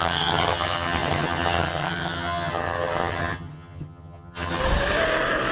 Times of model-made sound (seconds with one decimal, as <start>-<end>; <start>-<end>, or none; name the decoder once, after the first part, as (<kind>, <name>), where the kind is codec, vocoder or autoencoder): 0.0-4.6 (vocoder, HiFi-GAN)